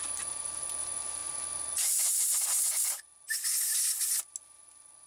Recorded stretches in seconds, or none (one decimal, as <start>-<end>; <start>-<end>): 0.0-5.1